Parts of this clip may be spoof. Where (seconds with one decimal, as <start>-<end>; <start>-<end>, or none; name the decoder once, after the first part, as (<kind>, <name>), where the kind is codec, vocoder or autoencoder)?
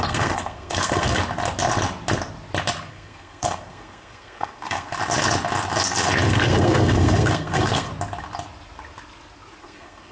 0.0-1.2 (codec, SNAC); 2.9-4.9; 6.3-7.9; 9.6-10.1